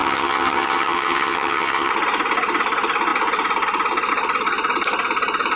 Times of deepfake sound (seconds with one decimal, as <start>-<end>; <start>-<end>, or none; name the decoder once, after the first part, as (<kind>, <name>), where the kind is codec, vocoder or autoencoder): 0.0-1.9 (vocoder, HiFi-GAN)

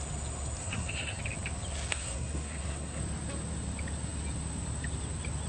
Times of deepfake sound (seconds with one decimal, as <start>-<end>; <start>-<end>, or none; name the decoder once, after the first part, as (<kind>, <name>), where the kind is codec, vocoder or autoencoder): 0.6-1.2 (codec, SNAC); 1.9-3.0

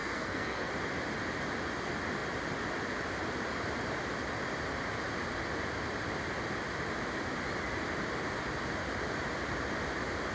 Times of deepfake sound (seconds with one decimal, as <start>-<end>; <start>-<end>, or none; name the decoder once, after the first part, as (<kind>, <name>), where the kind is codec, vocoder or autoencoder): 0.0-0.7 (codec, SNAC)

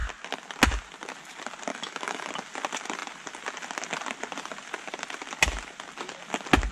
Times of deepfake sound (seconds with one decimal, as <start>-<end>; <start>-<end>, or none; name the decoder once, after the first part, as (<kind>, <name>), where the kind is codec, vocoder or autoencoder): 1.7-2.3 (autoencoder, DAC-VAE)

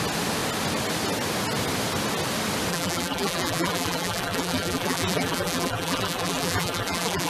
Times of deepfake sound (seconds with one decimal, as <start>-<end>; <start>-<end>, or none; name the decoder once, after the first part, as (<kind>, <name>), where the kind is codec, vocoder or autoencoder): 2.7-7.3 (vocoder, BigVGAN v2)

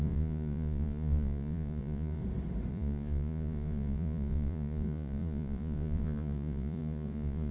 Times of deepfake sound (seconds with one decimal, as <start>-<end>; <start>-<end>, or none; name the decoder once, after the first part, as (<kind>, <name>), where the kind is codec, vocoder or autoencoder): 0.0-2.2 (vocoder, Vocos); 2.7-7.5

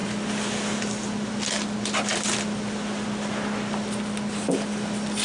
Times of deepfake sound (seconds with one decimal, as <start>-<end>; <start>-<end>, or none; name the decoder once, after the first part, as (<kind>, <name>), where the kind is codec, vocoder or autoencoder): none

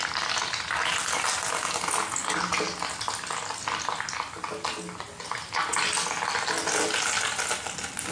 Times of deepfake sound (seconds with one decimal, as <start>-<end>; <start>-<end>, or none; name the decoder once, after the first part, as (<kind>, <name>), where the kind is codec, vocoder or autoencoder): none